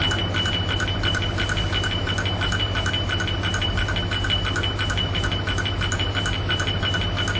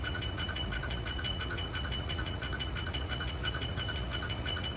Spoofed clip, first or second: second